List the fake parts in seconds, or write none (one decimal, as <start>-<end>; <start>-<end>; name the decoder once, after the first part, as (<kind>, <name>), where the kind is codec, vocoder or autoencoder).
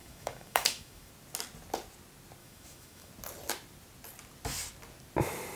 0.0-1.1 (autoencoder, DAC-VAE); 2.4-3.1